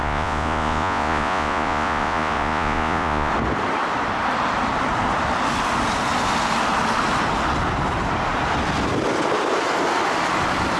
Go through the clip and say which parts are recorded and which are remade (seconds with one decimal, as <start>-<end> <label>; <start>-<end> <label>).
0.0-3.3 remade; 3.3-10.8 recorded